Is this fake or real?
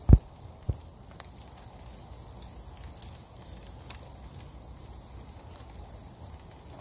real